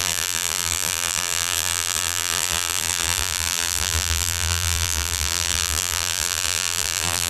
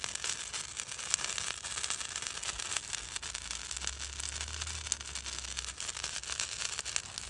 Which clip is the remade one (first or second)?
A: first